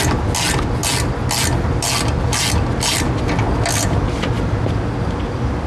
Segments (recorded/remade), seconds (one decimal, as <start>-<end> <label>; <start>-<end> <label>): 0.0-5.7 recorded